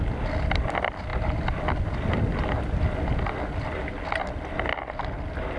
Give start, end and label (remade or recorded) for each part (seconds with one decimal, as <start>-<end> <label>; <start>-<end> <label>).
0.0-5.6 recorded